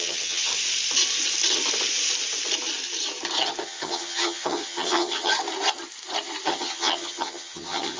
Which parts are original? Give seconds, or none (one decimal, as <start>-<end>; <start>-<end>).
0.5-3.6; 5.3-6.5